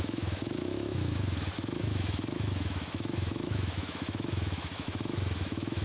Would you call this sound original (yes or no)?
no